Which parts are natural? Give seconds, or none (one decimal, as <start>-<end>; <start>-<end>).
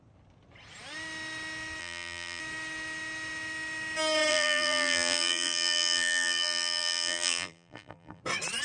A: 0.0-1.8; 2.4-4.3; 8.2-8.6